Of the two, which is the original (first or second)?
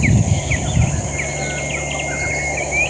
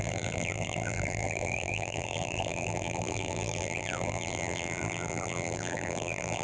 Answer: first